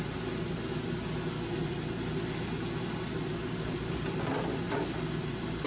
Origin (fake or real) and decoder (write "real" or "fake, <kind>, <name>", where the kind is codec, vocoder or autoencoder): real